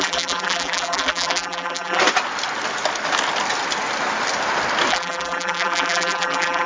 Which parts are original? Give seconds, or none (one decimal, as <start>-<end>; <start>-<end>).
2.0-4.9